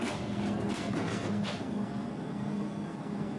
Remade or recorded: remade